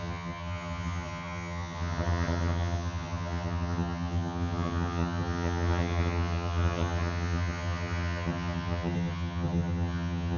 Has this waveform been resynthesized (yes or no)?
yes